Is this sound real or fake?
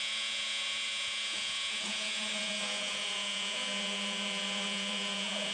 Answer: fake